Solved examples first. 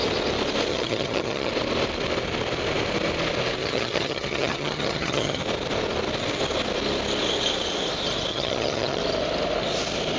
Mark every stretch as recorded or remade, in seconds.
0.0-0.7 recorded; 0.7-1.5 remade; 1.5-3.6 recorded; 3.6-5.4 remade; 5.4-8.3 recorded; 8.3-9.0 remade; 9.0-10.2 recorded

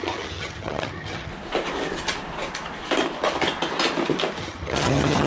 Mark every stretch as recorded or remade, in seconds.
0.0-1.3 remade; 1.3-4.4 recorded; 4.4-5.3 remade

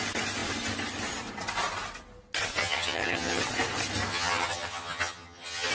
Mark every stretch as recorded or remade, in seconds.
0.0-2.6 recorded; 2.6-3.4 remade; 3.4-4.1 recorded; 4.1-5.7 remade

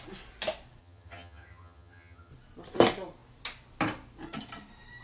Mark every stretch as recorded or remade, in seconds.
0.0-0.8 recorded; 0.8-2.3 remade; 2.3-5.0 recorded

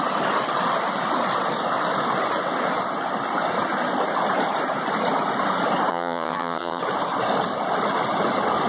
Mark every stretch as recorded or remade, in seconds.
0.0-5.9 recorded; 5.9-6.8 remade; 6.8-8.7 recorded